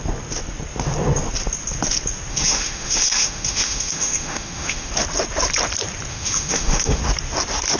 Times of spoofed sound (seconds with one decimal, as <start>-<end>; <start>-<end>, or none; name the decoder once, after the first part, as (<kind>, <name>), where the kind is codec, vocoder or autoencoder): 2.3-4.9 (autoencoder, DAC-VAE); 6.1-7.0

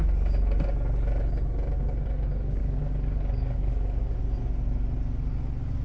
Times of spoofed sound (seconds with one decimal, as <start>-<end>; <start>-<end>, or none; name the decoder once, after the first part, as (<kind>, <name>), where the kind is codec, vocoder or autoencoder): 2.6-4.2 (codec, DAC)

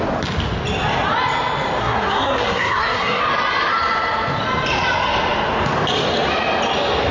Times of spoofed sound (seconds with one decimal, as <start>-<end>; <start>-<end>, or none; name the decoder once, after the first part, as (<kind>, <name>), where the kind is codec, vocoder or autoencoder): 1.8-3.2 (codec, SNAC)

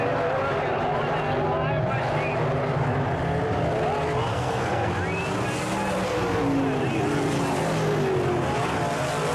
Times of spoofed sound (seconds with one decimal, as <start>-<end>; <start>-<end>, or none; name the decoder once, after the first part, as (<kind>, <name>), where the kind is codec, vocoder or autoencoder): 4.3-4.9 (codec, SNAC)

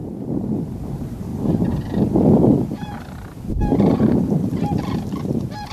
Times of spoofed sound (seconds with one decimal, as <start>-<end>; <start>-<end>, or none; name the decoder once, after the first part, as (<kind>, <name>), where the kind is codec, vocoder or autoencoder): 0.7-1.3 (vocoder, BigVGAN v2); 3.5-5.7

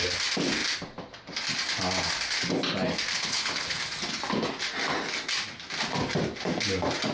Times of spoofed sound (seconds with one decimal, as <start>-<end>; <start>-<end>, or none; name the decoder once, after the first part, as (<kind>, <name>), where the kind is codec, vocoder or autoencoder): 3.1-3.8 (codec, HILCodec)

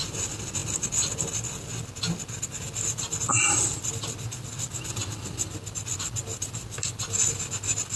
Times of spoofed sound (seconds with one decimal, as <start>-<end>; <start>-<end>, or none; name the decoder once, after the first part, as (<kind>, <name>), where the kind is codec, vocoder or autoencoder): none

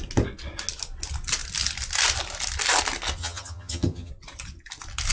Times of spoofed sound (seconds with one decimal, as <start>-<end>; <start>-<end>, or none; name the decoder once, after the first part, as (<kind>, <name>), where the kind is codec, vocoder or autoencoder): 3.2-4.1 (vocoder, HiFi-GAN)